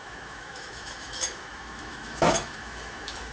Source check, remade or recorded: remade